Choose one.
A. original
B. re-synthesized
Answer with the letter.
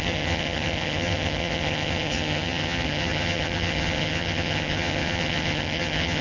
B